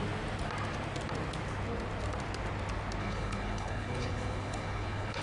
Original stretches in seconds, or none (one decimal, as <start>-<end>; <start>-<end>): 0.0-3.0